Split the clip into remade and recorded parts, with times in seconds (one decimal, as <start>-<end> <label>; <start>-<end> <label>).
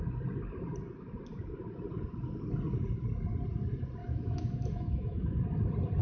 0.0-4.0 recorded; 4.0-5.4 remade; 5.4-6.0 recorded